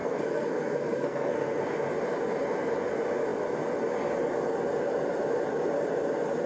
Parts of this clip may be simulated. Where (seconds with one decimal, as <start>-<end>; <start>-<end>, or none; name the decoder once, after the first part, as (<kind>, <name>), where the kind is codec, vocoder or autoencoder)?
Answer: 0.0-1.6 (codec, SNAC)